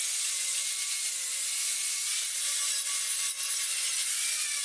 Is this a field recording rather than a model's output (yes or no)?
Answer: yes